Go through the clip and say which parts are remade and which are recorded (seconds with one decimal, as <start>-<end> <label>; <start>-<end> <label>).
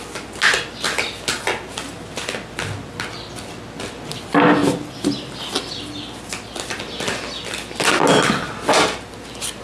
0.0-9.6 recorded